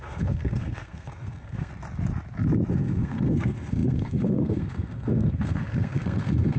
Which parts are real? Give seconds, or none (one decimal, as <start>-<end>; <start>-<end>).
1.7-2.7